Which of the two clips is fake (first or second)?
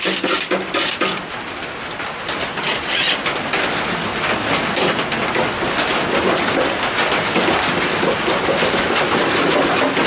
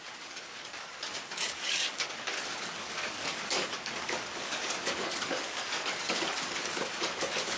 second